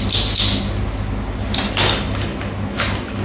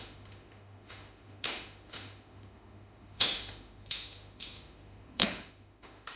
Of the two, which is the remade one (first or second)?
second